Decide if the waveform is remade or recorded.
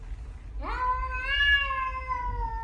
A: recorded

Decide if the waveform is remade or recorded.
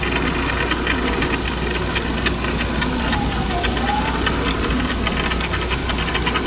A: recorded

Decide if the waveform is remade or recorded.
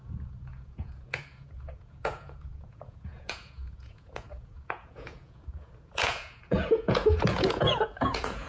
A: remade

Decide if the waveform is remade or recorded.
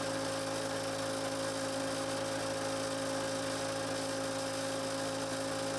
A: recorded